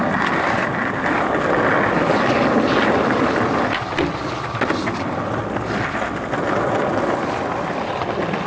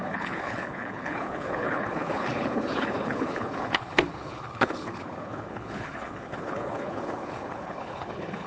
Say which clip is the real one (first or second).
first